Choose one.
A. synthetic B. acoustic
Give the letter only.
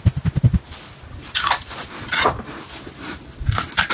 B